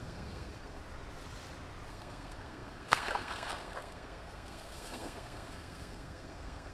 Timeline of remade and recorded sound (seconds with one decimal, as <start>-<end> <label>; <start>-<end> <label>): 0.0-0.8 remade; 0.8-1.9 recorded; 1.9-6.7 remade